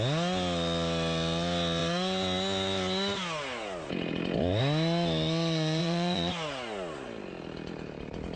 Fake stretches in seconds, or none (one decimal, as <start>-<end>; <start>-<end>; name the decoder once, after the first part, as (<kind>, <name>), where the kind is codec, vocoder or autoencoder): 5.8-6.3 (vocoder, Vocos)